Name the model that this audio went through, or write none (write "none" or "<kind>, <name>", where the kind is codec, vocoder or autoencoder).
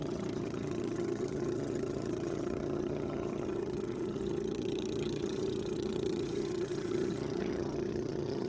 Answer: vocoder, HiFi-GAN